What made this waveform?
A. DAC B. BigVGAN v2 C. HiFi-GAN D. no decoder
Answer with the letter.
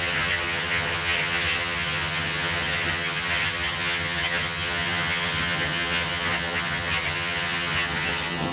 C